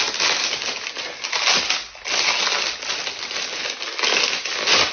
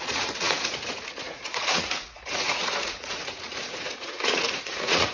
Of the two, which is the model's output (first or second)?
second